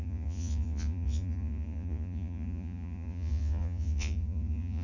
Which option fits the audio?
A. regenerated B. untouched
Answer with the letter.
A